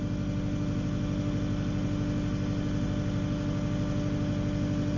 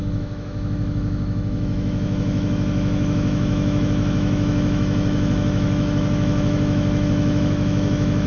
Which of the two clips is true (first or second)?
first